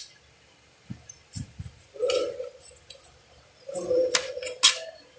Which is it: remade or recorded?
recorded